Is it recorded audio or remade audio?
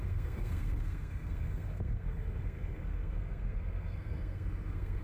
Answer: remade